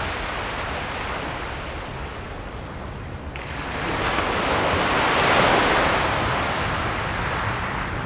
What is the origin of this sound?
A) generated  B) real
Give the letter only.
B